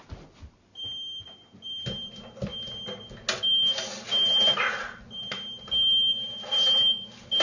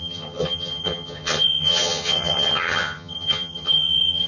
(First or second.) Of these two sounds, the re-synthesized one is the second